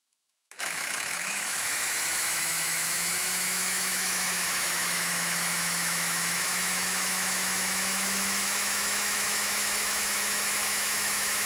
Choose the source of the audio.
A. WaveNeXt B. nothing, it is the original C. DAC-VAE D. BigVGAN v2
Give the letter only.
C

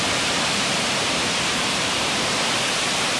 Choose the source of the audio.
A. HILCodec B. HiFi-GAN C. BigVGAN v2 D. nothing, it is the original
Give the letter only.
C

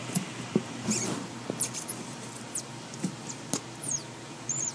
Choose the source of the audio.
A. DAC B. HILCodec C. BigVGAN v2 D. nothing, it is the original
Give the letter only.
D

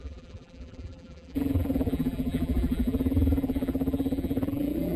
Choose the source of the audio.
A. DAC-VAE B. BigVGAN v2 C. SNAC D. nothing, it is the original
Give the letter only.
B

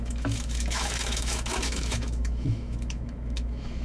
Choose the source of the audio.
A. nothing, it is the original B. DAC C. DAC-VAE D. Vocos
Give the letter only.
C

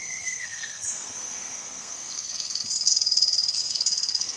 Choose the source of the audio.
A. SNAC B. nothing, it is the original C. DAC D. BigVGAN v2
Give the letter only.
A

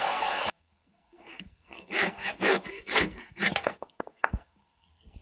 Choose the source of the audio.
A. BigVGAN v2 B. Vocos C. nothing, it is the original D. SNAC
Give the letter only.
D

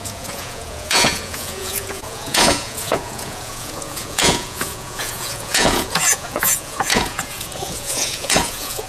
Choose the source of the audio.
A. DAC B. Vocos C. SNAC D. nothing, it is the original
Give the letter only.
B